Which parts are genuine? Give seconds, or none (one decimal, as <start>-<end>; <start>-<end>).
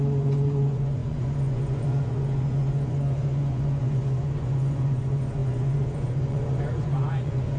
none